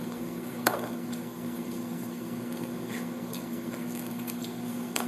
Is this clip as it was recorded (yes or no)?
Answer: no